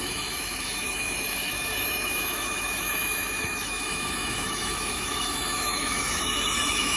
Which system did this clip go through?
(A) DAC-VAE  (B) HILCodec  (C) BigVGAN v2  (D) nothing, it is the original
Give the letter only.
A